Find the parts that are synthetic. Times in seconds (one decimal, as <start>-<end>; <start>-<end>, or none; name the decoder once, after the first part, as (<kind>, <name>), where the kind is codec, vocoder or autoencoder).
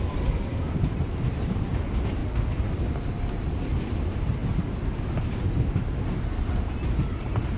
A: 0.0-2.2 (vocoder, BigVGAN v2); 2.9-4.4; 7.1-7.6